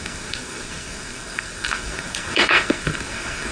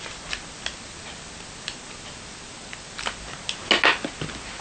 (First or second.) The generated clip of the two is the first